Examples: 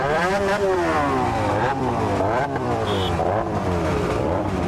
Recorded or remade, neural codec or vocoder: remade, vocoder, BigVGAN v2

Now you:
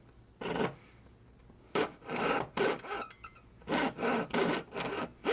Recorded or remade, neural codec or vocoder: recorded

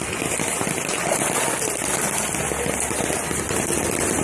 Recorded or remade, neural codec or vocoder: recorded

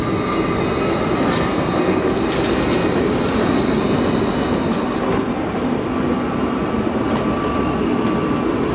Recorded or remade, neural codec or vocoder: recorded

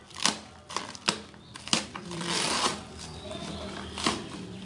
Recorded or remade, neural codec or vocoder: remade, vocoder, BigVGAN v2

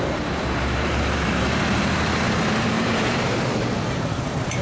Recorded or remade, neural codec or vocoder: remade, vocoder, BigVGAN v2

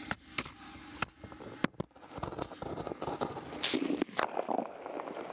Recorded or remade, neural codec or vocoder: recorded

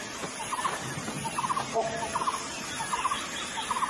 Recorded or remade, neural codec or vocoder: remade, vocoder, BigVGAN v2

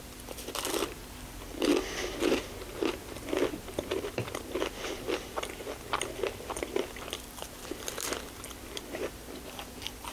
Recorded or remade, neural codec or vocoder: remade, vocoder, BigVGAN v2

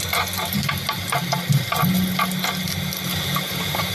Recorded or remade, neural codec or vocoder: recorded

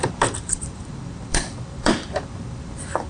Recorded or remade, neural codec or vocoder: remade, vocoder, BigVGAN v2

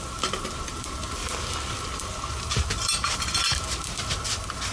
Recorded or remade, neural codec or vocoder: remade, vocoder, BigVGAN v2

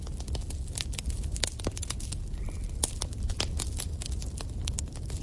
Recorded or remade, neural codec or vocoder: recorded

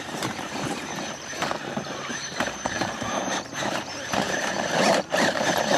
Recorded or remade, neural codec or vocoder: remade, vocoder, BigVGAN v2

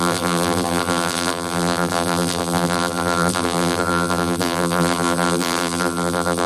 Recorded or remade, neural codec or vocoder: remade, vocoder, BigVGAN v2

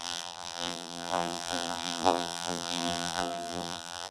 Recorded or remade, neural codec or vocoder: remade, vocoder, BigVGAN v2